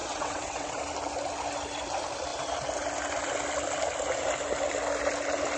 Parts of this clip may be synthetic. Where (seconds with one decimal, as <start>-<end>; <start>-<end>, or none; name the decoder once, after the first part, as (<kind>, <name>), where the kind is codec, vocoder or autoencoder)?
0.0-0.8 (vocoder, WaveNeXt)